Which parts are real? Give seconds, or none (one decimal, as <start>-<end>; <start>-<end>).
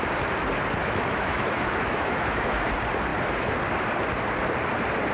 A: 0.0-0.8; 2.7-5.1